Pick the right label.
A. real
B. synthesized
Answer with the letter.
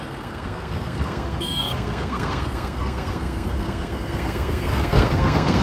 B